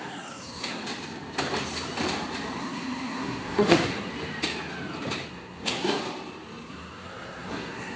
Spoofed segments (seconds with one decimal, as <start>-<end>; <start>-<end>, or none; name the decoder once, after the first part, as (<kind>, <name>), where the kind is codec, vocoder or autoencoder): 0.0-0.8 (codec, SNAC); 2.6-4.1; 5.3-6.0; 6.7-8.0